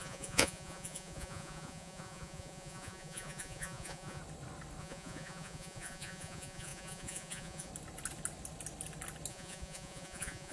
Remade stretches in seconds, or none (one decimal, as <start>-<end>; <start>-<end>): 0.0-4.2; 4.8-7.7; 9.3-10.5